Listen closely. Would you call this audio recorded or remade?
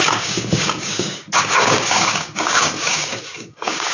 remade